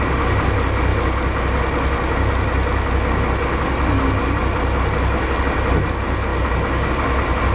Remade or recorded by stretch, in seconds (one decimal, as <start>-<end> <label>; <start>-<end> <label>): 0.0-7.5 recorded